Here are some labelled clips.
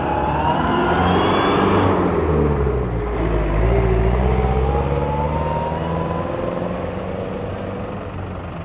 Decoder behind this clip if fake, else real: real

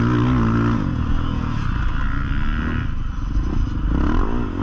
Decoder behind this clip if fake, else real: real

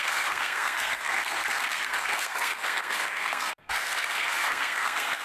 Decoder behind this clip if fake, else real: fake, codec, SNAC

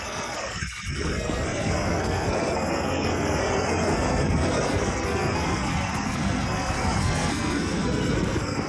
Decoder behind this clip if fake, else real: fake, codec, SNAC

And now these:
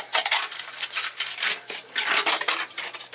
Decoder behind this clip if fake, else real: real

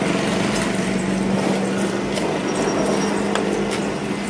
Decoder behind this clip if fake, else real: real